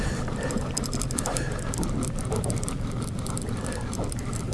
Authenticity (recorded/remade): recorded